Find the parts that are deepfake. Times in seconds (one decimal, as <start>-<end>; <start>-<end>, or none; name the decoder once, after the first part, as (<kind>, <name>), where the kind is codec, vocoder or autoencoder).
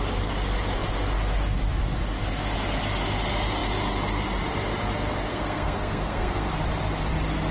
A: 5.3-6.5 (codec, SNAC)